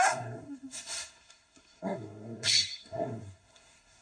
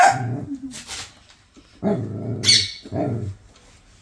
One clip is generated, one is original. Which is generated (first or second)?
first